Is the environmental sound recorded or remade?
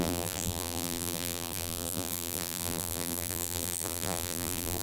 remade